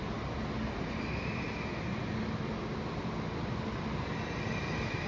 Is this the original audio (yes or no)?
yes